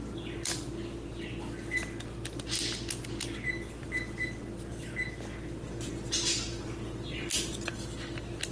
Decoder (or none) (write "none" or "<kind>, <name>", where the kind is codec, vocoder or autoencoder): none